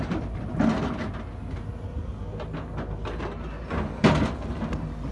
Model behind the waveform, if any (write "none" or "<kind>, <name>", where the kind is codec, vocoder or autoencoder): none